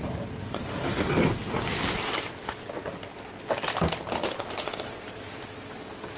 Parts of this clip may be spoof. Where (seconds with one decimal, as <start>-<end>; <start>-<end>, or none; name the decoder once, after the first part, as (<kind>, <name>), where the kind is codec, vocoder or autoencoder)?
none